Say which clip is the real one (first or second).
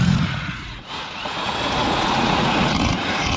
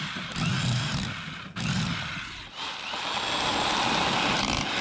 second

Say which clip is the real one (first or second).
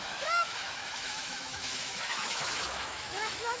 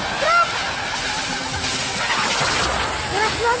second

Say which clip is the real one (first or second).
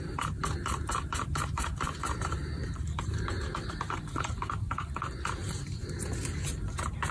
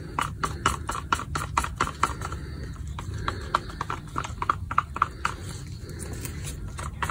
second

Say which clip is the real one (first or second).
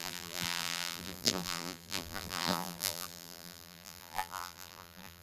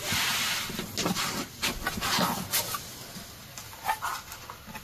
second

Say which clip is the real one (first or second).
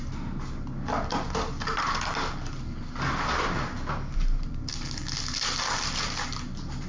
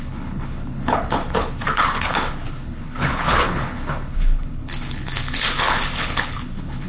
first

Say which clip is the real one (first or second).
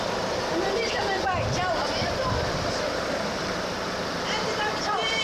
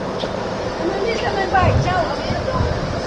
second